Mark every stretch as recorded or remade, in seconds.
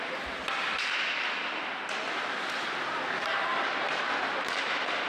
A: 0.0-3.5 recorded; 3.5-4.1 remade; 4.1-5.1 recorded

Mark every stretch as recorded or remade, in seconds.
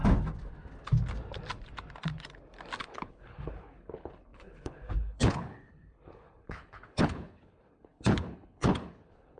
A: 0.0-2.8 recorded; 2.8-9.4 remade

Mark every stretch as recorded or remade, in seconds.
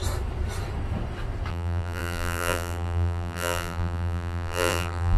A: 0.0-1.5 recorded; 1.5-5.2 remade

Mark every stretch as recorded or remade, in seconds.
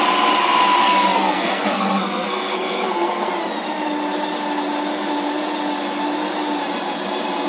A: 0.0-0.8 recorded; 0.8-3.3 remade; 3.3-7.5 recorded